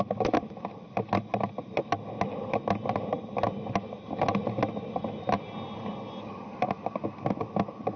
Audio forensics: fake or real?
real